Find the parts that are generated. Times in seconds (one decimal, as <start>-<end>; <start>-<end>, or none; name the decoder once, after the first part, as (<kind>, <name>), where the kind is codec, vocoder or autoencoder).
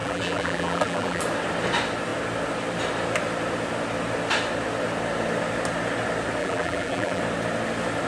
0.0-1.2 (vocoder, BigVGAN v2); 6.4-7.2